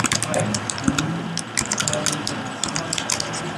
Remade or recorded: recorded